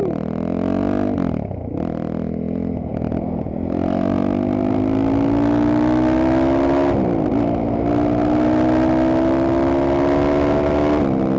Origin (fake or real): real